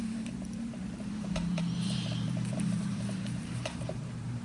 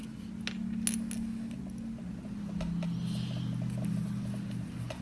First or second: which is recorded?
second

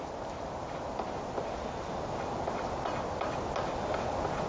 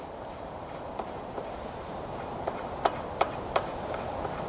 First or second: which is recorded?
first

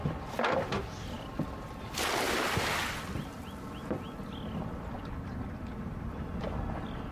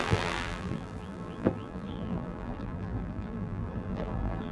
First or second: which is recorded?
first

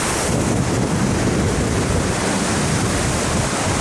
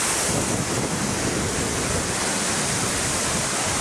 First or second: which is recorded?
first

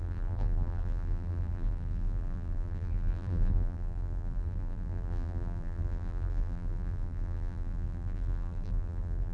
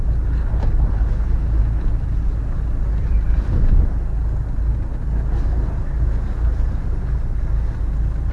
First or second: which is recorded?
second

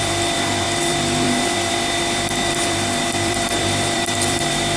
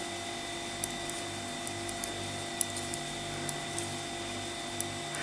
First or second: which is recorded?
second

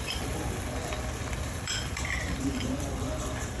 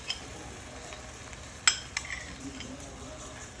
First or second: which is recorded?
second